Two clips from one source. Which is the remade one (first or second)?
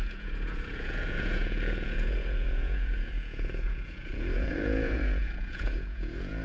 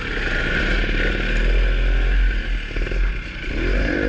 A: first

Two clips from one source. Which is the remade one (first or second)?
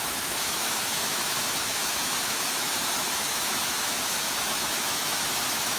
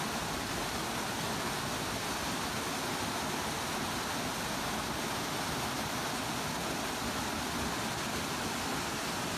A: first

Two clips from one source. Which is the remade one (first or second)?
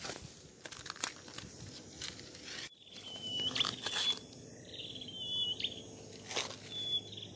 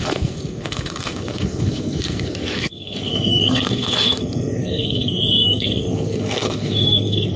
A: second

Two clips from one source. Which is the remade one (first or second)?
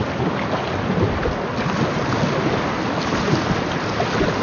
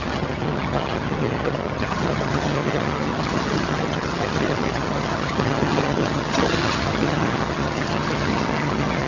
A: second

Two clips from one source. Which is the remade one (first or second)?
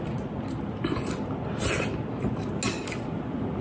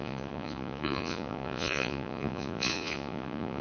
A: second